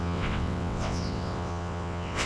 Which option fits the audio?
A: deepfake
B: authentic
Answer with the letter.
A